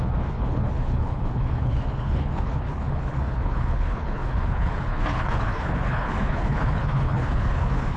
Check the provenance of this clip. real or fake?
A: fake